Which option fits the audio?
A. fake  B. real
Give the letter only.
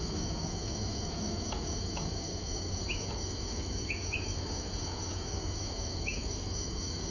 A